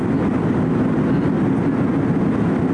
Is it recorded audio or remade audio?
recorded